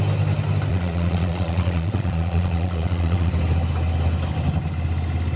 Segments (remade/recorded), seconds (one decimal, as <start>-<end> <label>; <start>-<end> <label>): 0.0-0.7 recorded; 0.7-3.3 remade; 3.3-5.4 recorded